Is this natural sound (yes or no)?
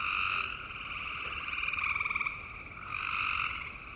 yes